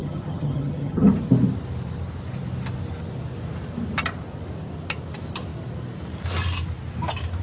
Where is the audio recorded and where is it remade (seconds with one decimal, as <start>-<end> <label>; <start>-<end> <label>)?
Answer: 0.0-1.1 remade; 1.1-7.4 recorded